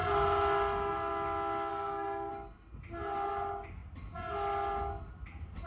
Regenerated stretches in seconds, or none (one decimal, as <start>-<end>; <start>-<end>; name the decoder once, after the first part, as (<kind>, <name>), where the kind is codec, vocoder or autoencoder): 1.7-2.3 (codec, SNAC)